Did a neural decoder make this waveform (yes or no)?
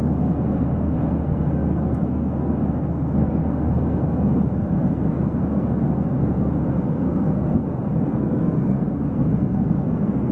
yes